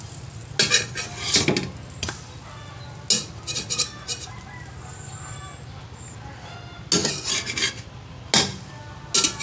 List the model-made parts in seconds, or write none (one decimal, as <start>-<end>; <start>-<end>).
none